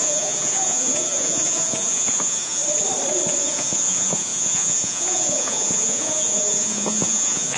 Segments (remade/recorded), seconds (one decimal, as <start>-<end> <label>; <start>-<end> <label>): 0.0-2.6 remade; 2.6-3.4 recorded; 3.4-7.6 remade